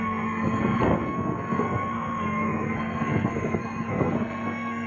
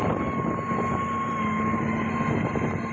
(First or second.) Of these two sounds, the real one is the second